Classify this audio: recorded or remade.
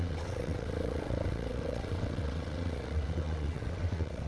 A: remade